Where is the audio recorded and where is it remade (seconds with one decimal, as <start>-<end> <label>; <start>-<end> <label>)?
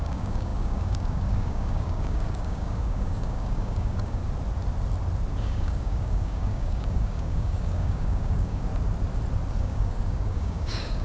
0.0-4.2 remade; 4.2-5.4 recorded; 5.4-8.7 remade; 8.7-9.6 recorded; 9.6-11.0 remade